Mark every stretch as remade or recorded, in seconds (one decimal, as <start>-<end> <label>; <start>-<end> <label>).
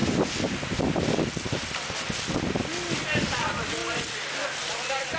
0.0-1.4 recorded; 1.4-3.8 remade; 3.8-4.5 recorded; 4.5-5.2 remade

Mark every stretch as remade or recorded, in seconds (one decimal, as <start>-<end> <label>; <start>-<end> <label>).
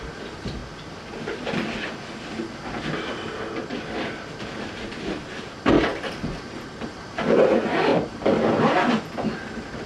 0.0-5.9 recorded; 5.9-7.4 remade; 7.4-7.9 recorded; 7.9-8.5 remade; 8.5-9.9 recorded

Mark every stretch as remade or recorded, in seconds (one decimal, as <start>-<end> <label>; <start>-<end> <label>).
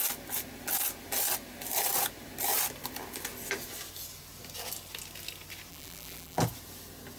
0.0-5.7 recorded; 5.7-6.4 remade; 6.4-7.2 recorded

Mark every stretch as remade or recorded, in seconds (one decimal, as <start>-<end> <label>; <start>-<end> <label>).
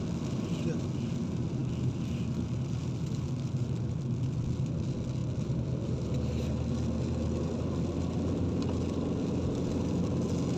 0.0-10.6 recorded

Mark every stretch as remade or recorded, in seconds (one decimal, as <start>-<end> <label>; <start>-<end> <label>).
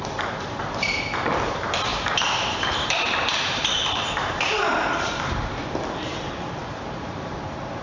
0.0-1.9 recorded; 1.9-4.4 remade; 4.4-6.6 recorded; 6.6-7.3 remade; 7.3-7.8 recorded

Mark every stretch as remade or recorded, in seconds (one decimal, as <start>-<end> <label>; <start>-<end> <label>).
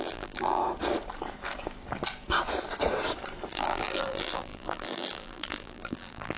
0.0-0.6 remade; 0.6-3.5 recorded; 3.5-6.4 remade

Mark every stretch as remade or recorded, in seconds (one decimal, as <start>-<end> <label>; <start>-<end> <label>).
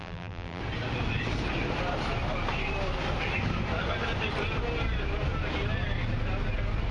0.0-0.6 remade; 0.6-6.9 recorded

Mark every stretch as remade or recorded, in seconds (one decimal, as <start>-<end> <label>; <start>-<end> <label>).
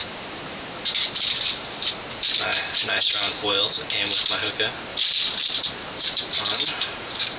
0.0-2.5 recorded; 2.5-3.6 remade; 3.6-4.9 recorded; 4.9-7.4 remade